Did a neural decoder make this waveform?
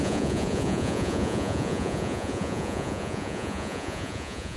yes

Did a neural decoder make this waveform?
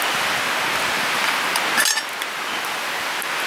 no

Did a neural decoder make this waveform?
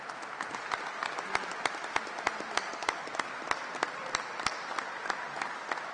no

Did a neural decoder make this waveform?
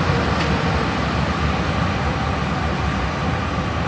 no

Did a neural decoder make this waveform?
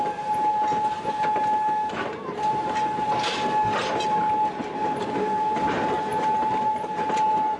no